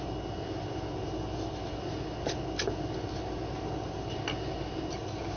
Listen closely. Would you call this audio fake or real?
real